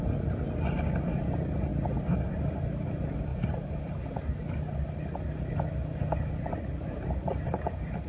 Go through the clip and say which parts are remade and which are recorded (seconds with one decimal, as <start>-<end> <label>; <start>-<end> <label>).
0.0-8.1 recorded